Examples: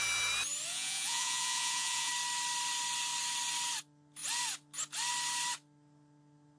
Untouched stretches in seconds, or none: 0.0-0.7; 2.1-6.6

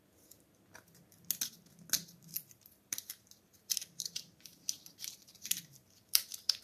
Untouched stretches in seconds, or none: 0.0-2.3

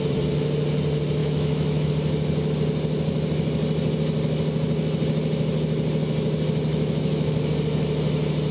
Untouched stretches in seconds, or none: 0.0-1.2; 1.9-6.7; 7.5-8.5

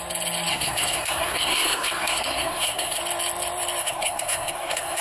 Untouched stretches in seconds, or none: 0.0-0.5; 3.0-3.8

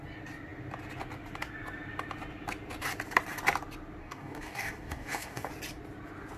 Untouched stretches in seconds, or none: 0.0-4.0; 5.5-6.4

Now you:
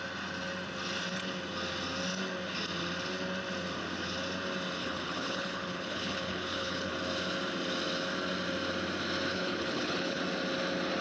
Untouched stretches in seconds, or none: 0.0-4.8; 6.9-9.3; 10.2-11.0

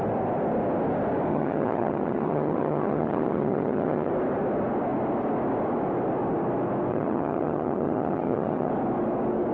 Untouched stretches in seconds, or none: 0.0-1.3; 4.1-6.9; 8.7-9.5

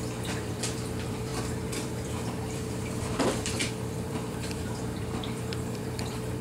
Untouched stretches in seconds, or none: none